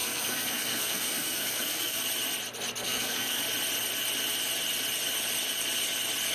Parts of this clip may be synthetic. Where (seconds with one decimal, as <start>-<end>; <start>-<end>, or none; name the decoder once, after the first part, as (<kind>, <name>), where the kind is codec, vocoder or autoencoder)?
0.0-2.0 (codec, SNAC); 2.8-3.4